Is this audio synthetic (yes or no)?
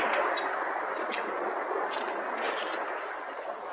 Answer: no